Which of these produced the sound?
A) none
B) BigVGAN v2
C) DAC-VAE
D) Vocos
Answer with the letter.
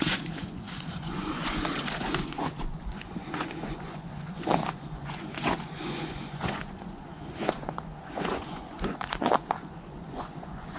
D